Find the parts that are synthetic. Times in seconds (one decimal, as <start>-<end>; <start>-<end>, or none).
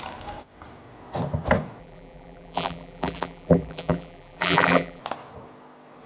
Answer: 1.8-5.0